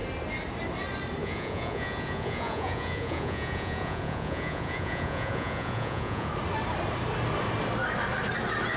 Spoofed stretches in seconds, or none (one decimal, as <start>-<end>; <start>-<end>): 1.2-6.3